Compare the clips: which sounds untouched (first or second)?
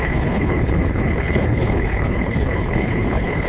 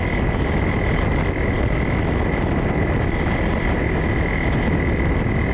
second